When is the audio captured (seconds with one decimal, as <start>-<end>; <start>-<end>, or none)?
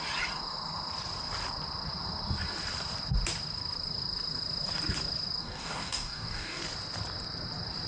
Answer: 0.0-5.4; 6.6-7.9